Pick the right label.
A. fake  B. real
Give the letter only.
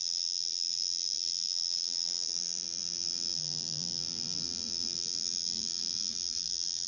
A